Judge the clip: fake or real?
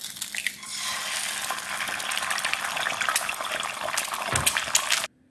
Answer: real